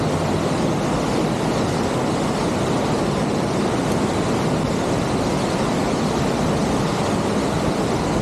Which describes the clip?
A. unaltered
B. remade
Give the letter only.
A